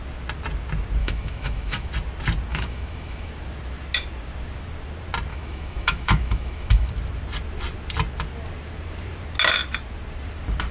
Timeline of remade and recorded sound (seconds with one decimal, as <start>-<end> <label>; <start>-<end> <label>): 0.0-1.0 recorded; 1.0-1.9 remade; 1.9-2.5 recorded; 2.5-3.3 remade; 3.3-5.3 recorded; 5.3-6.9 remade; 6.9-10.7 recorded